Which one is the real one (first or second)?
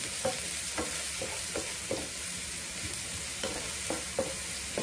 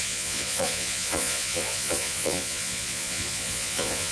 first